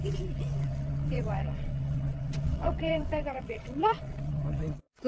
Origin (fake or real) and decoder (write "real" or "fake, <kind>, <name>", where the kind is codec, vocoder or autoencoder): fake, vocoder, WaveNeXt